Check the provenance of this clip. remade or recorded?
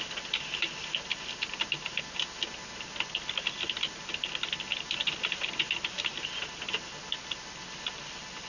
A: recorded